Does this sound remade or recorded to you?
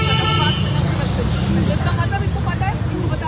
recorded